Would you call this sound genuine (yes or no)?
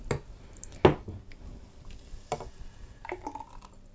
yes